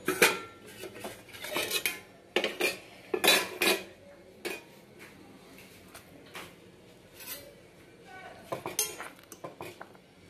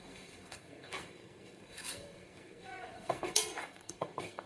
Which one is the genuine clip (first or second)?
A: first